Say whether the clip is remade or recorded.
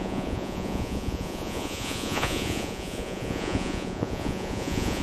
remade